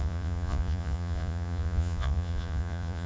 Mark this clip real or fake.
fake